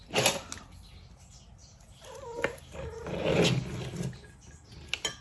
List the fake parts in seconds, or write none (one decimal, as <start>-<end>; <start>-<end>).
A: none